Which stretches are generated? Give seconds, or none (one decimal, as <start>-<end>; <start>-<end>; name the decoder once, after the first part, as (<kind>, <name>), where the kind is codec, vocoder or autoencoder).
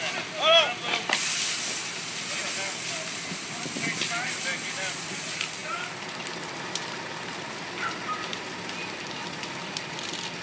none